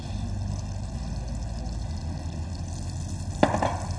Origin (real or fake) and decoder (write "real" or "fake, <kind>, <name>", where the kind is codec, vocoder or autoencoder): real